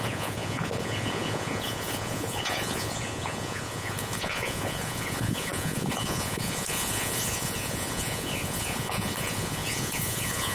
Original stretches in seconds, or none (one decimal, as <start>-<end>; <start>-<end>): none